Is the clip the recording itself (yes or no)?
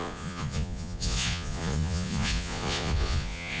no